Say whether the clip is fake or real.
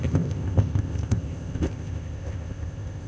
fake